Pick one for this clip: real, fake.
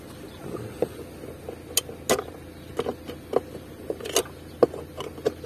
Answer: real